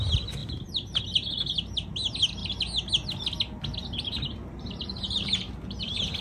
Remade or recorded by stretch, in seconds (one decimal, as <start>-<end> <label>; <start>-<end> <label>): 0.0-0.4 recorded; 0.4-1.0 remade; 1.0-3.8 recorded; 3.8-5.5 remade; 5.5-6.2 recorded